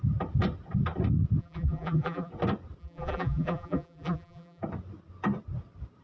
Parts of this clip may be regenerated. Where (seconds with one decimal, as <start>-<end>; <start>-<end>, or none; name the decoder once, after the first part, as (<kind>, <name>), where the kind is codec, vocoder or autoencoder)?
1.4-2.3 (vocoder, BigVGAN v2); 2.8-4.6

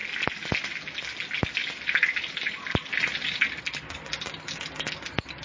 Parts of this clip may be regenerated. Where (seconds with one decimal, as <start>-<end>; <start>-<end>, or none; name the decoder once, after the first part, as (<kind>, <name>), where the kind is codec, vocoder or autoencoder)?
1.6-4.1 (vocoder, BigVGAN v2)

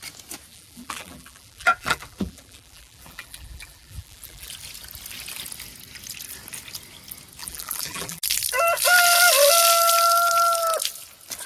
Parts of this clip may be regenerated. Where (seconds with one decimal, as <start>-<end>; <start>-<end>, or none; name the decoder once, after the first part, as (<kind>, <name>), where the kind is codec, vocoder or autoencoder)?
0.5-4.5 (vocoder, BigVGAN v2); 7.4-8.2

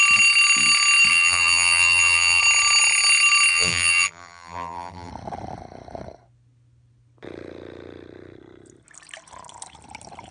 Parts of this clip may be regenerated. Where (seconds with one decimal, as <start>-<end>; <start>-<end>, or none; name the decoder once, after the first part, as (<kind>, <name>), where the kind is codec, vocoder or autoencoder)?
1.1-2.4 (vocoder, BigVGAN v2); 3.5-5.1

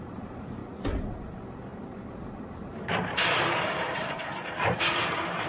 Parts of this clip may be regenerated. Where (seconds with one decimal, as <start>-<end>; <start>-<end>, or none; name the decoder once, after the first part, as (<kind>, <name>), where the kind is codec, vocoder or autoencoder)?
0.0-0.6 (vocoder, BigVGAN v2); 1.2-5.5